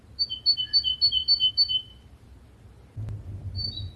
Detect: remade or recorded recorded